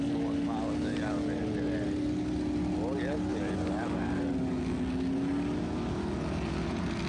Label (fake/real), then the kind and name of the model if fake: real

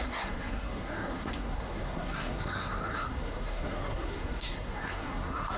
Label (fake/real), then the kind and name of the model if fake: fake, codec, SNAC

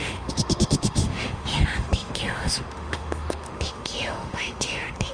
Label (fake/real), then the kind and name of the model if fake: fake, autoencoder, DAC-VAE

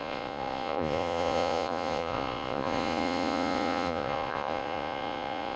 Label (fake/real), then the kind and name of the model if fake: fake, vocoder, Vocos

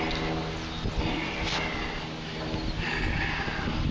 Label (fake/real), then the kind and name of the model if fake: real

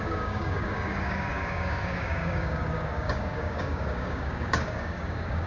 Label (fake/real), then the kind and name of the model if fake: fake, codec, DAC